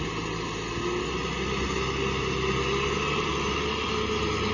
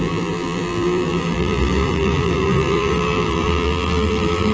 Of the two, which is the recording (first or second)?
first